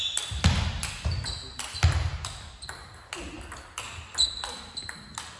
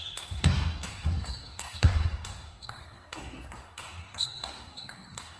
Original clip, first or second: first